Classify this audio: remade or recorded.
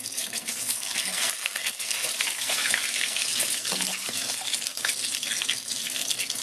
remade